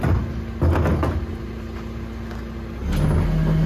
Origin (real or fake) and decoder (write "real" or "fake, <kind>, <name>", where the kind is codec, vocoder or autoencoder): real